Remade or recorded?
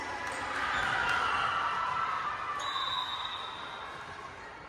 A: recorded